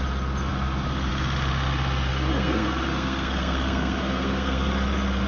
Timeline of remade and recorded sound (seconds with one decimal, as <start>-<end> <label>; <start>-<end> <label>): 0.0-2.1 recorded; 2.1-4.7 remade; 4.7-5.3 recorded